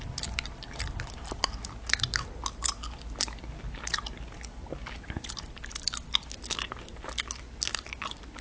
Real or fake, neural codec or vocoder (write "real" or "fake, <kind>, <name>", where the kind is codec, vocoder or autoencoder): real